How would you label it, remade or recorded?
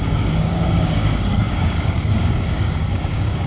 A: remade